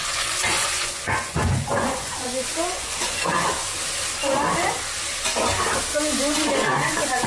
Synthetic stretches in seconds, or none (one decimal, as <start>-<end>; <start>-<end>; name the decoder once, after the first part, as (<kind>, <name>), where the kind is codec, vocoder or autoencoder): 0.0-3.5 (vocoder, Vocos); 5.9-7.3